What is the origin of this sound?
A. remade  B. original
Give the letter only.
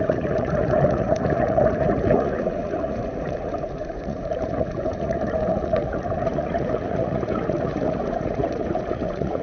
A